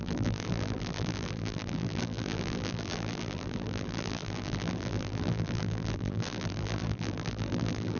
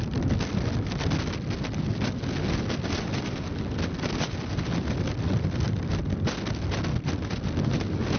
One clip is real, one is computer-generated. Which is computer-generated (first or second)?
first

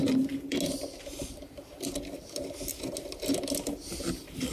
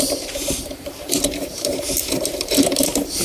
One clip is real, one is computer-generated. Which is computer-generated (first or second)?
second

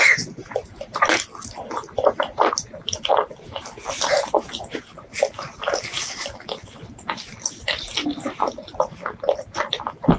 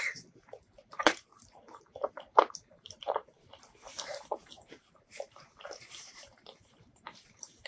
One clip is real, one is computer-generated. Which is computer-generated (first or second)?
second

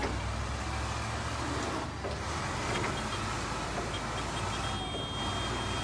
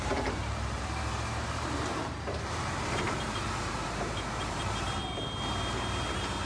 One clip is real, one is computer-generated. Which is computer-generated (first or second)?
second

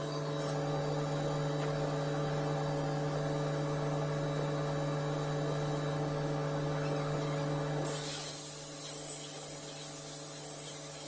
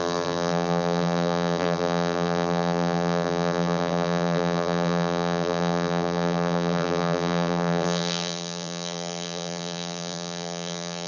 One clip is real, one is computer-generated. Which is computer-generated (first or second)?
second